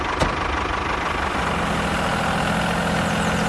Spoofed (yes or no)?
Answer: no